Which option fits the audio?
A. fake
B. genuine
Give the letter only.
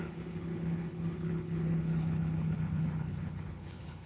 A